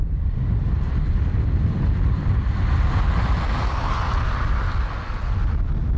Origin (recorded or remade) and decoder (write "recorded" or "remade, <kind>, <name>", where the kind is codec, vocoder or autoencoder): recorded